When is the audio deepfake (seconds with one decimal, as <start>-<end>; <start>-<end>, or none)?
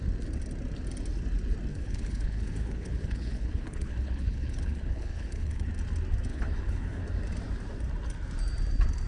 1.7-5.7; 6.3-7.0